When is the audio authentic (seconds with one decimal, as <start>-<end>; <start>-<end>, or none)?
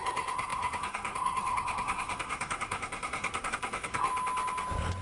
4.1-5.0